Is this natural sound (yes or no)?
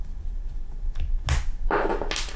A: yes